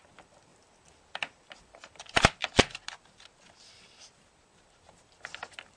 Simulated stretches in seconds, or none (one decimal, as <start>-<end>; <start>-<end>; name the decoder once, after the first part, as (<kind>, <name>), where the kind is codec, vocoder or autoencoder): 0.0-0.5 (vocoder, BigVGAN v2); 2.0-5.8